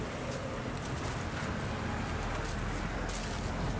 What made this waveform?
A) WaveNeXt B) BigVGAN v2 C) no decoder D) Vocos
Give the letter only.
C